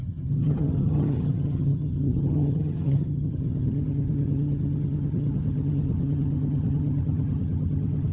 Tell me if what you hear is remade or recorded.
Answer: remade